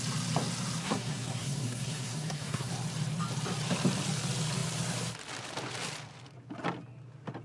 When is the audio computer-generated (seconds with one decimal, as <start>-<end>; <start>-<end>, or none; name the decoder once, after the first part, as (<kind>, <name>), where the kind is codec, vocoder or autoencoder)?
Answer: 0.8-2.7 (codec, SNAC)